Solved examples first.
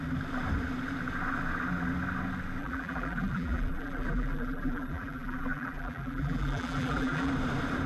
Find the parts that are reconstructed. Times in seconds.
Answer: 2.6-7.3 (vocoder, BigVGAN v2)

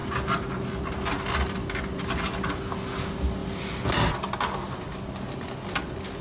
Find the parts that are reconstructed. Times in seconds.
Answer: none

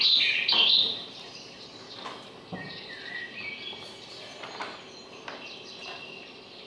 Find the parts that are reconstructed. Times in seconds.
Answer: 1.0-1.7 (vocoder, BigVGAN v2); 4.2-4.8